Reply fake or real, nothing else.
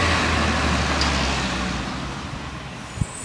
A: real